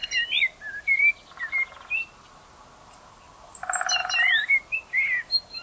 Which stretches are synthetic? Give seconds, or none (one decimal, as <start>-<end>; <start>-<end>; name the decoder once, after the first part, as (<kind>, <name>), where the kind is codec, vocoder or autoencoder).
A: 4.0-4.6 (vocoder, BigVGAN v2)

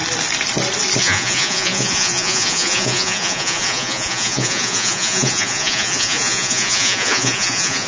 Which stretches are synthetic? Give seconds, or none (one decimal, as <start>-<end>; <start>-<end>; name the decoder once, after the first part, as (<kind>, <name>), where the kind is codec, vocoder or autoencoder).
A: 1.0-7.9 (vocoder, Vocos)